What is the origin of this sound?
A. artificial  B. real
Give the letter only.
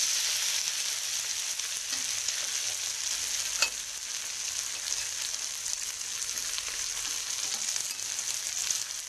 B